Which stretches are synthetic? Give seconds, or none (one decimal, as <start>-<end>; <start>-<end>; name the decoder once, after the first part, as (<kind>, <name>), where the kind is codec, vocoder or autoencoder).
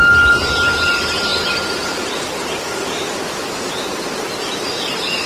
none